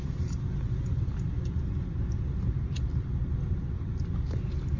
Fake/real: fake